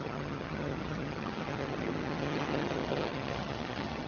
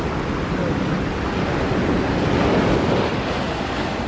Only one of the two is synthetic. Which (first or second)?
first